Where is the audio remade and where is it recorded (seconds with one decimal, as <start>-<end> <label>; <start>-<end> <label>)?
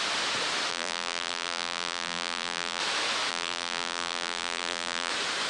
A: 0.0-0.7 recorded; 0.7-2.8 remade; 2.8-3.3 recorded; 3.3-5.1 remade; 5.1-5.5 recorded